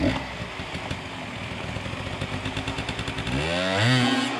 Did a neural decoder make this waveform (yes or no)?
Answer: no